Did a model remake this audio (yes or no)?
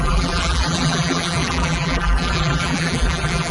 yes